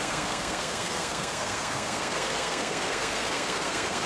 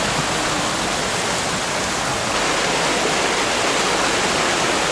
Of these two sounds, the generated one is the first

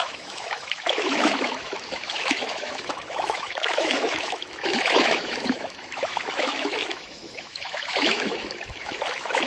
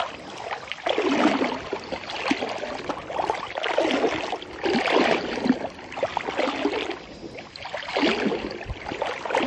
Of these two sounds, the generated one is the first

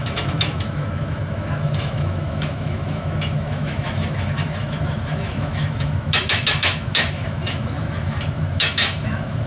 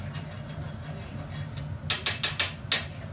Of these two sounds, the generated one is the first